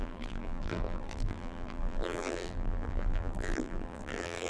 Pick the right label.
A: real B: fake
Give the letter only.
B